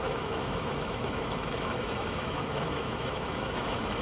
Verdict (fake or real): fake